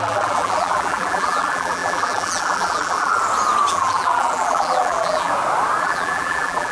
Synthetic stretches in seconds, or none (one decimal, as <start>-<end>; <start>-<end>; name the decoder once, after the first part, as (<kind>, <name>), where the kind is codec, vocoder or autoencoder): 0.0-3.2 (vocoder, BigVGAN v2); 3.7-5.3; 5.8-6.7